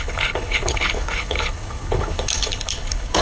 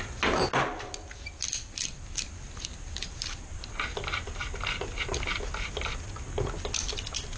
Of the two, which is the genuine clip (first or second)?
second